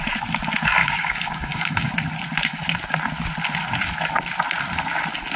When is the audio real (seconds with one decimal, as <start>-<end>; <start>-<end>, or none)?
0.0-0.8; 1.9-5.4